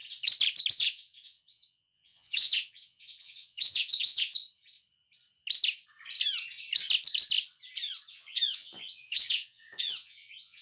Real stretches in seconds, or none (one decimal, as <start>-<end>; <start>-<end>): 0.0-0.7; 4.4-8.1